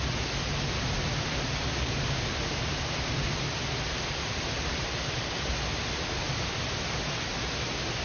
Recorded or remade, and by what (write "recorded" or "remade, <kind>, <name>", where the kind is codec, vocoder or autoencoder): recorded